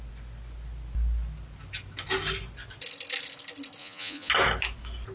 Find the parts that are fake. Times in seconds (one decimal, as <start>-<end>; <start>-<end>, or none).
3.8-4.3